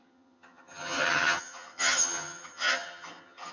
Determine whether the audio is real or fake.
fake